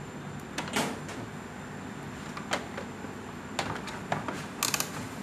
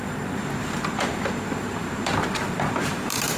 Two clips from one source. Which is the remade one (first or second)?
second